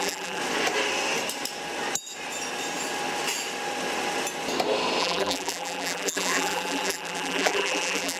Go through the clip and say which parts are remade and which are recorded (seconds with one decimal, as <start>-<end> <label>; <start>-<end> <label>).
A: 0.0-0.4 remade; 0.4-5.0 recorded; 5.0-8.2 remade